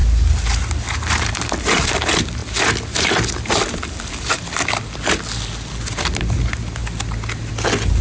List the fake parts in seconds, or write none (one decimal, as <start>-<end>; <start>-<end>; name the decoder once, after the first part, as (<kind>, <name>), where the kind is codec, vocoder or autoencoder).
none